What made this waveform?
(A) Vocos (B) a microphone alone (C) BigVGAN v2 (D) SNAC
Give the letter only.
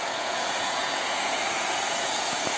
A